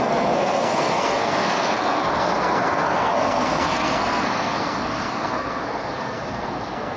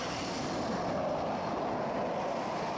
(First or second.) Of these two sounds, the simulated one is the first